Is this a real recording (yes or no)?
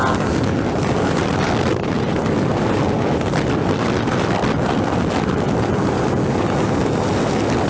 yes